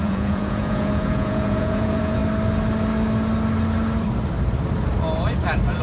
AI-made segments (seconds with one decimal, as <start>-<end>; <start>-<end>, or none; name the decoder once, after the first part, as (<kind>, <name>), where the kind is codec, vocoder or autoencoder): 0.0-2.2 (vocoder, Vocos)